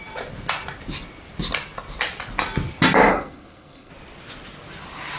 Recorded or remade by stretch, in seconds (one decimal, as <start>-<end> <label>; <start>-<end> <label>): 0.0-3.1 recorded; 3.1-3.9 remade; 3.9-5.2 recorded